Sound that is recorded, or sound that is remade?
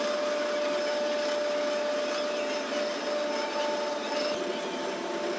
recorded